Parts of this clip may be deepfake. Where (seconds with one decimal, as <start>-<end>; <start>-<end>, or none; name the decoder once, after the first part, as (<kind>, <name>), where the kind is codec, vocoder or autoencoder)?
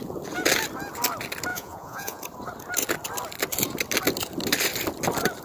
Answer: 1.5-2.2 (vocoder, Vocos)